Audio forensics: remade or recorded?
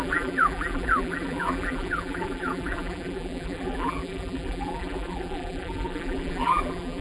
remade